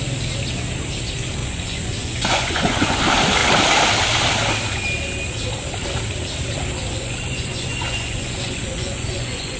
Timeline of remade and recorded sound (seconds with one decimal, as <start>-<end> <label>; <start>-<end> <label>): 0.0-1.4 recorded; 1.4-3.0 remade; 3.0-6.9 recorded; 6.9-9.6 remade